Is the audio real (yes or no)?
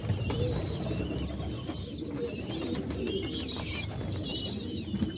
yes